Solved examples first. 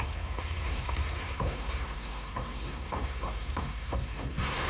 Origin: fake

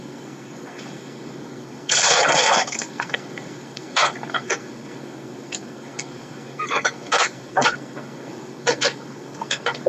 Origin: fake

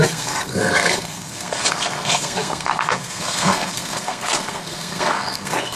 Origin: fake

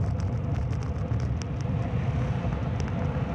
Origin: real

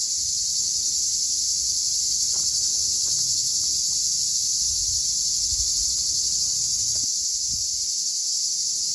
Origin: real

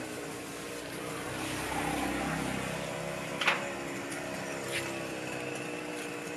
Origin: real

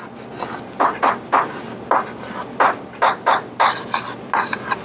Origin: real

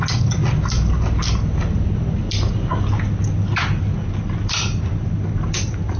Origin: real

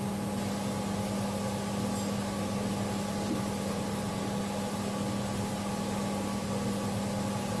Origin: real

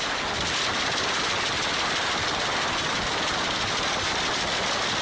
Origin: real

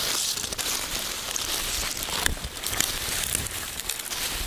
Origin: real